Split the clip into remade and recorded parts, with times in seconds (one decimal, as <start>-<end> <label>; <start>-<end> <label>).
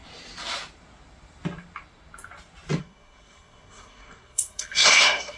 0.0-2.8 recorded; 2.8-5.4 remade